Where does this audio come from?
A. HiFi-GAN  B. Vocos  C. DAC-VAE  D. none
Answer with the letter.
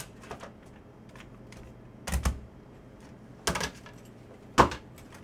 D